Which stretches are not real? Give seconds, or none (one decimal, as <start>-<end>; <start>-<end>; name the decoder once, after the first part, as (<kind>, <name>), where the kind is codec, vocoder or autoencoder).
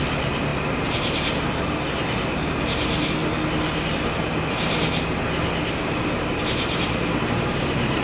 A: none